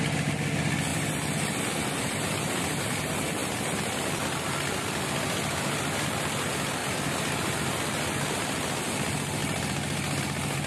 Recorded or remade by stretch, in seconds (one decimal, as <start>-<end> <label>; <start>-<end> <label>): 0.0-6.8 recorded; 6.8-8.8 remade; 8.8-10.7 recorded